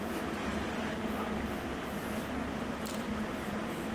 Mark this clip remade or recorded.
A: remade